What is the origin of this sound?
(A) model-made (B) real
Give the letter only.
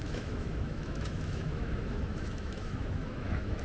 A